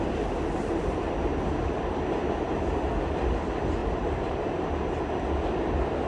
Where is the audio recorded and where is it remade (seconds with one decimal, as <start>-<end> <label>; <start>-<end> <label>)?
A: 0.0-3.8 recorded; 3.8-4.7 remade; 4.7-6.1 recorded